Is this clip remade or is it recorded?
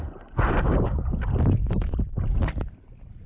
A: recorded